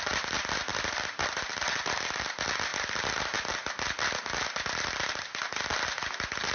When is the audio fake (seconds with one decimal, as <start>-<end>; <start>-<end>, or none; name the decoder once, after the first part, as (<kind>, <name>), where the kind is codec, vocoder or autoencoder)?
none